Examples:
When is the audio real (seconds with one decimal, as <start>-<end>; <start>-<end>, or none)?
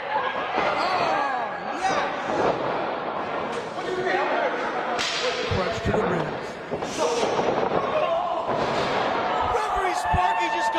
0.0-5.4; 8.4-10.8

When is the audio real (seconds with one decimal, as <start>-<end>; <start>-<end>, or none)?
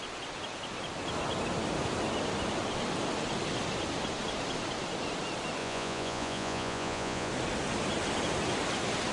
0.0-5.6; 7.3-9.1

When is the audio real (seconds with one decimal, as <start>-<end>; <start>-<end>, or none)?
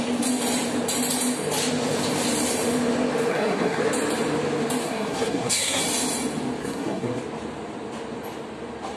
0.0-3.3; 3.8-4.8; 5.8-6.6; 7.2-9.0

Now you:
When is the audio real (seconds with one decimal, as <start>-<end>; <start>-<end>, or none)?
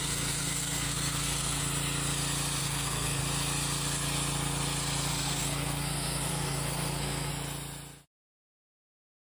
1.6-2.6; 3.2-5.1; 7.3-8.3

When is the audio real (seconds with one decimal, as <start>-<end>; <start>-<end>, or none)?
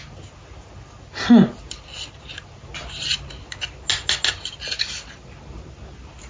0.0-6.3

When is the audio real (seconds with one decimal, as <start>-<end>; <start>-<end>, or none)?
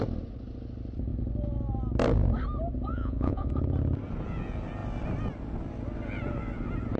0.0-2.9; 3.5-7.0